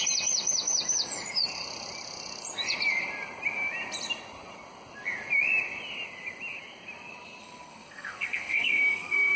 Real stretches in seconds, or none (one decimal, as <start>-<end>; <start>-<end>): 0.0-7.4